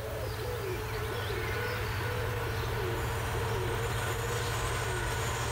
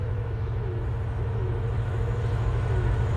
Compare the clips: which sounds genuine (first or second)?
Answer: first